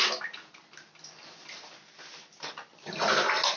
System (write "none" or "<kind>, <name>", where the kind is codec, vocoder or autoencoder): none